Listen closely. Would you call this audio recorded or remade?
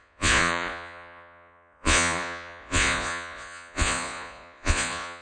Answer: remade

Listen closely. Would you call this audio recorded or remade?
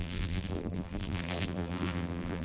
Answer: remade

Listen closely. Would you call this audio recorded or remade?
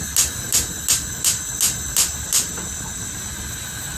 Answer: recorded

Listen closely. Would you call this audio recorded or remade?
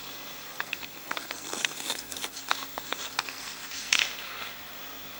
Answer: remade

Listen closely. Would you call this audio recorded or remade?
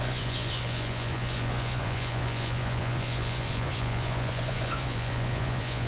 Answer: remade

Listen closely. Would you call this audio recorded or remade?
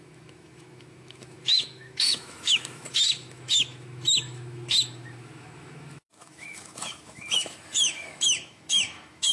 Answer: remade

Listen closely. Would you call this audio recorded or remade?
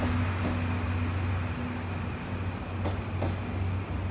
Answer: recorded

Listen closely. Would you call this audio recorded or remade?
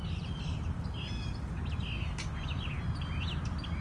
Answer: recorded